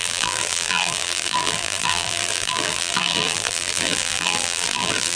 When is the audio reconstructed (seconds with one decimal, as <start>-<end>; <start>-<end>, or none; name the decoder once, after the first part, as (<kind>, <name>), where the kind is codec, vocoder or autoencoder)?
0.0-5.2 (vocoder, BigVGAN v2)